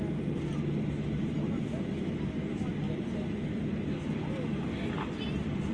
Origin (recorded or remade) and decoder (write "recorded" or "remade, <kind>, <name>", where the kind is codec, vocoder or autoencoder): recorded